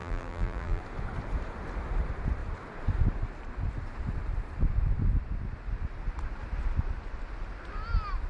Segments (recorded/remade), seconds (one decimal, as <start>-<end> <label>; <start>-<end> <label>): 0.0-0.8 remade; 0.8-8.3 recorded